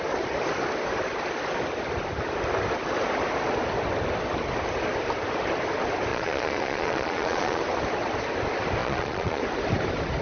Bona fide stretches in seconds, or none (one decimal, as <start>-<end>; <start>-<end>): 0.0-6.1; 7.6-8.8; 9.4-10.2